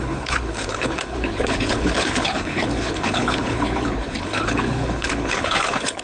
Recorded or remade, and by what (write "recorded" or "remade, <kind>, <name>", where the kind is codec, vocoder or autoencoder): remade, codec, HILCodec